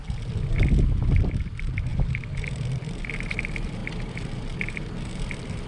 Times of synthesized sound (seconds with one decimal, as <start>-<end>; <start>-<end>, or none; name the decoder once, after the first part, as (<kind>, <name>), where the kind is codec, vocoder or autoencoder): 0.5-5.7 (vocoder, BigVGAN v2)